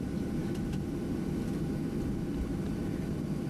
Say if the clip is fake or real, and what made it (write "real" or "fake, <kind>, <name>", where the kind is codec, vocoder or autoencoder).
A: real